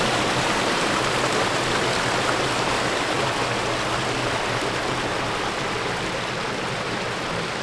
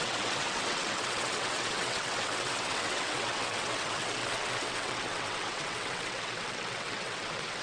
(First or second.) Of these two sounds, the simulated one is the second